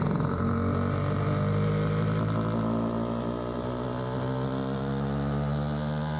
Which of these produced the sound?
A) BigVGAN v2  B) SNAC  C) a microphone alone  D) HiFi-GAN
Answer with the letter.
C